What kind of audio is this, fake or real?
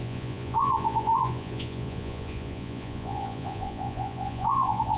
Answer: fake